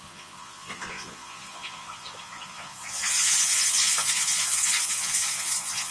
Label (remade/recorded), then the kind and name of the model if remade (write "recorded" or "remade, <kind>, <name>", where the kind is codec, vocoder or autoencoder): remade, vocoder, Vocos